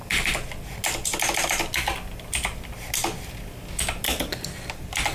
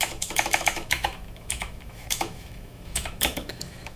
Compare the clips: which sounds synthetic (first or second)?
second